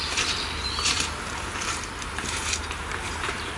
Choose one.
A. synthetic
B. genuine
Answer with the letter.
A